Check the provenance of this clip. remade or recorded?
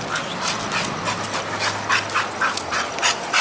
recorded